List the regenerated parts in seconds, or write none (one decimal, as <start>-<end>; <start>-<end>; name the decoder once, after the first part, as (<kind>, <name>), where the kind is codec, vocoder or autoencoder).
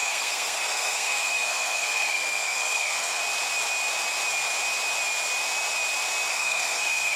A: 0.0-3.2 (codec, SNAC); 6.3-7.2